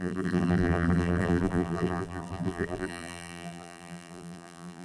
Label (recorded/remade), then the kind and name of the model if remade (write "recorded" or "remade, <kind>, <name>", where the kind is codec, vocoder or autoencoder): remade, vocoder, BigVGAN v2